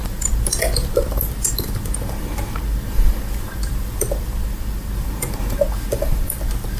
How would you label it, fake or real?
fake